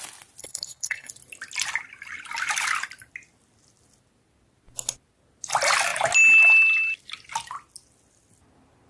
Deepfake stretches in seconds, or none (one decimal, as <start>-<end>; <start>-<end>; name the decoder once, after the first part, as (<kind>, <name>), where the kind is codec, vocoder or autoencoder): 0.4-1.1 (codec, HILCodec)